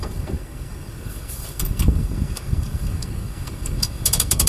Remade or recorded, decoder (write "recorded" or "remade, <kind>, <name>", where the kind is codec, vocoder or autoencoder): remade, codec, SNAC